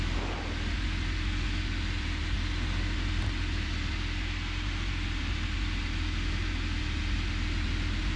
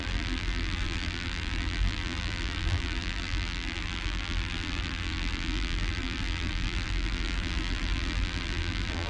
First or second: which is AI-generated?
second